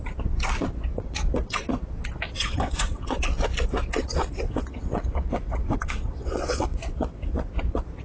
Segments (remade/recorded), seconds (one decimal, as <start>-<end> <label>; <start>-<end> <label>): 0.0-0.9 recorded; 0.9-1.7 remade; 1.7-2.3 recorded; 2.3-3.2 remade; 3.2-4.0 recorded; 4.0-7.5 remade; 7.5-8.0 recorded